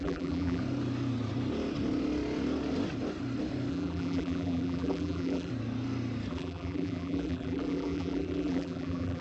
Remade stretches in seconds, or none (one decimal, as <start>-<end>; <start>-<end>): 0.0-0.6; 3.7-5.5; 6.3-9.2